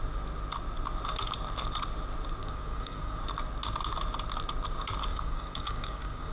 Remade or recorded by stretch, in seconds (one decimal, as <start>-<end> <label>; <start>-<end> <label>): 0.0-2.4 recorded; 2.4-3.2 remade; 3.2-5.1 recorded; 5.1-6.3 remade